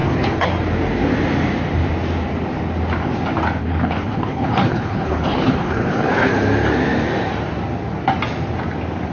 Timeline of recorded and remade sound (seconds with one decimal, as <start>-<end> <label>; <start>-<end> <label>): 0.0-0.5 remade; 0.5-3.6 recorded; 3.6-6.3 remade; 6.3-9.1 recorded